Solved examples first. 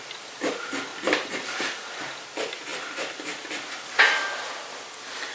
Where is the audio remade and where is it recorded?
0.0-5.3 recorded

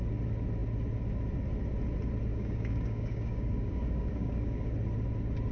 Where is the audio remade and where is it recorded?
0.0-2.3 recorded; 2.3-4.7 remade; 4.7-5.5 recorded

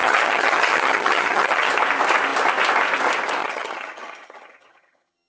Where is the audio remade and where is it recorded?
0.0-1.7 remade; 1.7-3.4 recorded; 3.4-5.3 remade